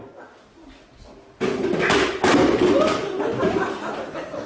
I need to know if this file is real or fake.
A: real